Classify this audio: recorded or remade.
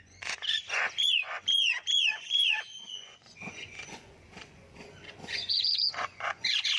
remade